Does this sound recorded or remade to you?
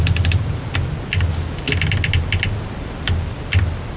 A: recorded